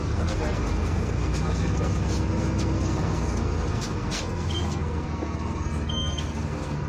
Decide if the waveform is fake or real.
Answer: fake